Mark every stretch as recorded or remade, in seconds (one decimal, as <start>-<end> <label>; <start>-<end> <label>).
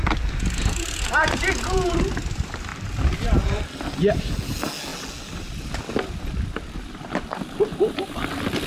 0.0-2.7 recorded; 2.7-3.6 remade; 3.6-7.7 recorded; 7.7-8.2 remade; 8.2-8.7 recorded